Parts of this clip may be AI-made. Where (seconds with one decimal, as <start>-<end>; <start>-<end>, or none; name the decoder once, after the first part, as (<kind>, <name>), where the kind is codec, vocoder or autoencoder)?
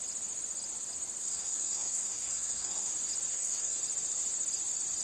1.2-2.9 (codec, SNAC); 3.3-3.8